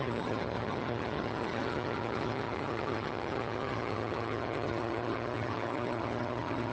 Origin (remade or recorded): remade